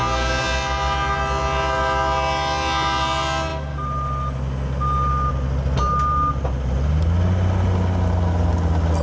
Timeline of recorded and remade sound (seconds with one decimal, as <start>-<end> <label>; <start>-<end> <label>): 0.0-9.0 recorded